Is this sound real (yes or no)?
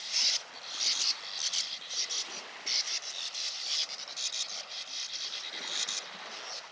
yes